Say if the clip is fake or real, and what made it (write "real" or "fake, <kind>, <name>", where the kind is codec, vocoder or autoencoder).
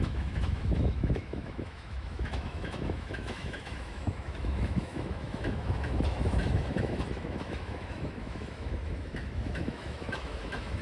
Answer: fake, autoencoder, DAC-VAE